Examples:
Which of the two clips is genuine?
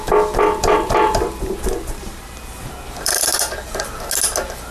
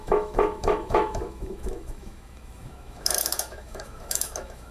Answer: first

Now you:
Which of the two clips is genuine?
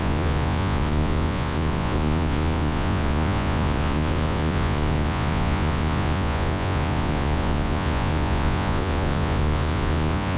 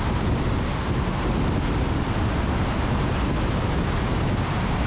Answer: second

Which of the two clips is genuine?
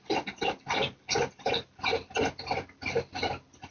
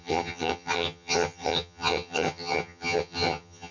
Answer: first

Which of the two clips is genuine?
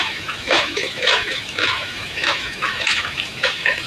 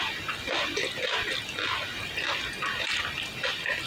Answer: second